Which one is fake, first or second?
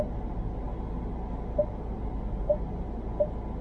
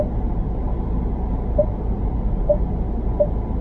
second